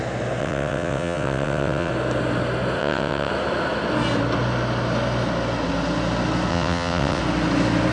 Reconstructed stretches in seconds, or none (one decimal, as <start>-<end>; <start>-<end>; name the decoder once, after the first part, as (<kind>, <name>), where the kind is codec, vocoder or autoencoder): 0.4-1.9 (vocoder, WaveNeXt); 2.8-3.3; 6.5-7.2